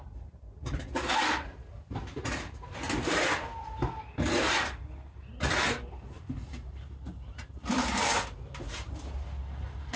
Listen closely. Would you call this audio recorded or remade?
recorded